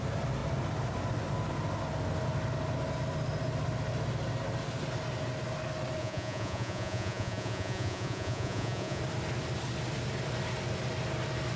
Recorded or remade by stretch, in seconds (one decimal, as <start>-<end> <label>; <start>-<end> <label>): 0.0-6.0 recorded; 6.0-9.0 remade; 9.0-11.6 recorded